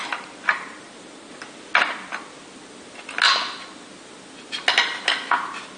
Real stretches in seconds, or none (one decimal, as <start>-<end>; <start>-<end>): 0.0-5.8